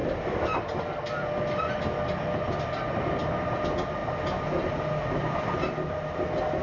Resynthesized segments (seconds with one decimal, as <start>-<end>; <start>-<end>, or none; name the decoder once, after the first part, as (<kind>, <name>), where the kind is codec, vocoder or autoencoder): none